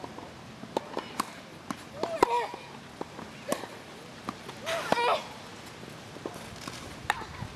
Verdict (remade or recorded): recorded